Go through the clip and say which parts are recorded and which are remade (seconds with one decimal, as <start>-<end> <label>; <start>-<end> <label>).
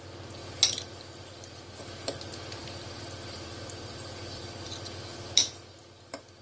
0.0-2.6 recorded; 2.6-5.8 remade; 5.8-6.4 recorded